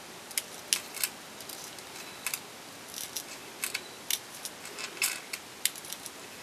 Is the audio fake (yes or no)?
no